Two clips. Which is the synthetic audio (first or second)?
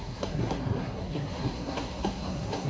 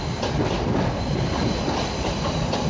first